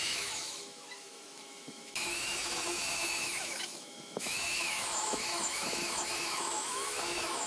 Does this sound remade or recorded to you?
remade